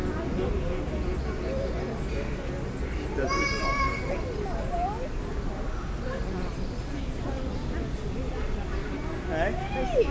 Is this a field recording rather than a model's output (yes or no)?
yes